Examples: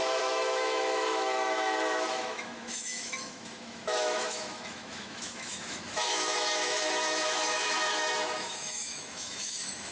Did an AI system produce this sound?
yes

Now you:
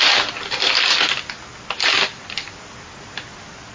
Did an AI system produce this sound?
no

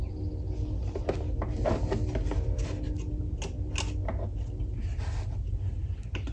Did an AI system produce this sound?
no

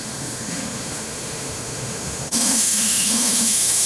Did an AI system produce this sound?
yes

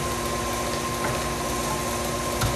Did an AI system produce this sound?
no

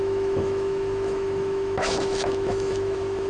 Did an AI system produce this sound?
yes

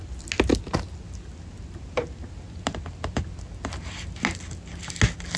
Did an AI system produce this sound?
no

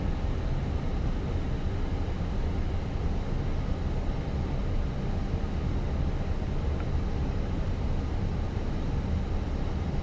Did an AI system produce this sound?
no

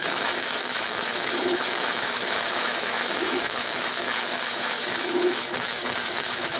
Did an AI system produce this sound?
yes